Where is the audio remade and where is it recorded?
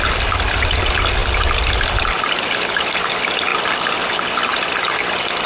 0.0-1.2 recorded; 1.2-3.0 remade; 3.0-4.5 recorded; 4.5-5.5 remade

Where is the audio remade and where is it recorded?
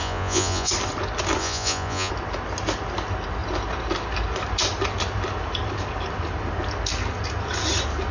0.0-0.7 remade; 0.7-1.4 recorded; 1.4-2.1 remade; 2.1-8.1 recorded